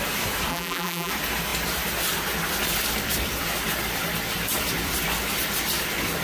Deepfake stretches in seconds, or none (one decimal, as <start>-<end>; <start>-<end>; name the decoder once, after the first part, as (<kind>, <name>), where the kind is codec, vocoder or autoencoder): 0.5-1.1 (vocoder, BigVGAN v2)